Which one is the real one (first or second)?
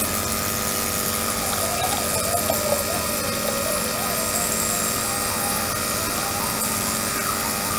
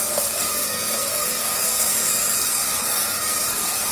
first